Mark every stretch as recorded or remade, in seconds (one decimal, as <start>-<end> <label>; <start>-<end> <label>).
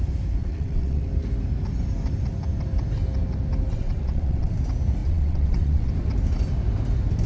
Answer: 0.0-0.4 recorded; 0.4-1.1 remade; 1.1-3.7 recorded; 3.7-4.5 remade; 4.5-5.0 recorded; 5.0-5.9 remade; 5.9-7.3 recorded